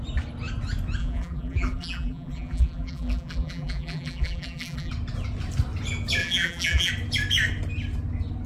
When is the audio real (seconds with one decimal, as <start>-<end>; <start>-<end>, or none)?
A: 0.0-1.0; 4.9-6.2; 6.9-8.5